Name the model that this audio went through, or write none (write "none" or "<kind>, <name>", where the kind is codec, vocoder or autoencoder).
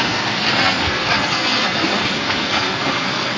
codec, SNAC